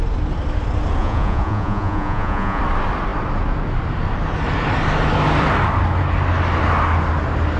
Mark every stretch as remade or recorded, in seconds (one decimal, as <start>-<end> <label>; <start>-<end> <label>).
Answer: 0.0-1.0 recorded; 1.0-2.6 remade; 2.6-7.6 recorded

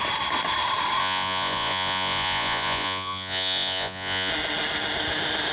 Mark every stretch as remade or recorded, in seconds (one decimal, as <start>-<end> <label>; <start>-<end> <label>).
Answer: 0.0-1.0 recorded; 1.0-4.3 remade; 4.3-5.5 recorded

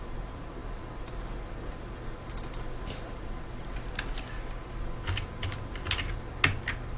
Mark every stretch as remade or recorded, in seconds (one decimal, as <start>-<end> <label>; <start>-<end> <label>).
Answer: 0.0-7.0 recorded

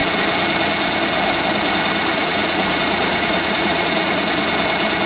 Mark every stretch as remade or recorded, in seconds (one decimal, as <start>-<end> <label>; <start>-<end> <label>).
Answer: 0.0-2.1 recorded; 2.1-4.2 remade; 4.2-5.1 recorded

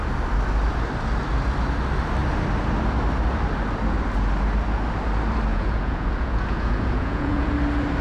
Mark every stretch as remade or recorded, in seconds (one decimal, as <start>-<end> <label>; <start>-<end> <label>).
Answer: 0.0-5.5 recorded; 5.5-7.5 remade; 7.5-8.0 recorded